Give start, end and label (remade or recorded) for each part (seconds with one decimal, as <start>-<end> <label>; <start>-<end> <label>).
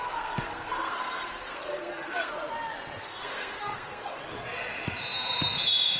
0.0-2.3 remade; 2.3-3.0 recorded; 3.0-4.2 remade; 4.2-6.0 recorded